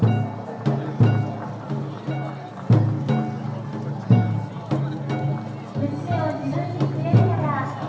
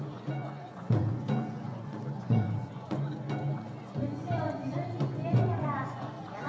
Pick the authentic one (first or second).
first